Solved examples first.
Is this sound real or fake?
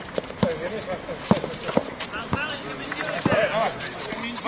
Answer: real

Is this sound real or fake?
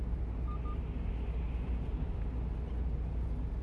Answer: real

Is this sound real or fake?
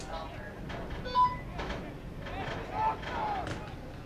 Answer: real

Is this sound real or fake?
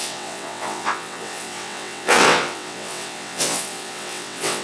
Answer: fake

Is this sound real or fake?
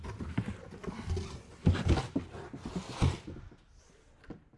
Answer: real